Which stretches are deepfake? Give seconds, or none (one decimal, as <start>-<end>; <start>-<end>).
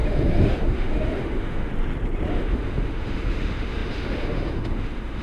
0.0-1.7; 2.3-5.2